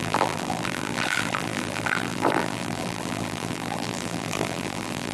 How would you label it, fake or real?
fake